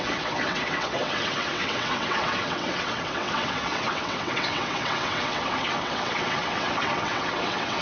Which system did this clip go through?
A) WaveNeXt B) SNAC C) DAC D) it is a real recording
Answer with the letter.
A